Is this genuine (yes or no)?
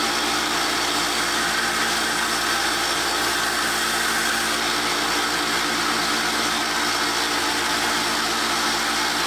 yes